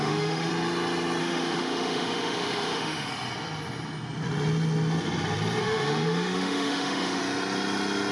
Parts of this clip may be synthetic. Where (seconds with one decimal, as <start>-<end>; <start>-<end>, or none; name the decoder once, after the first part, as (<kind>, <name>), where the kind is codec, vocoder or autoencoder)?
0.0-0.5 (autoencoder, DAC-VAE); 1.2-3.1; 5.6-7.2